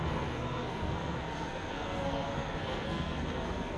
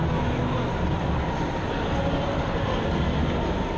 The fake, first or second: first